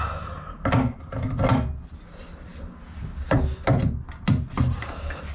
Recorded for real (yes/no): yes